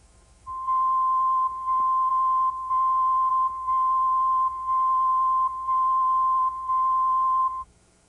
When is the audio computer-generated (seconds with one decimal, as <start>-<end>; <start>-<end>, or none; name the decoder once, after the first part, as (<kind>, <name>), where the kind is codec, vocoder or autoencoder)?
0.0-2.1 (autoencoder, DAC-VAE); 3.3-8.1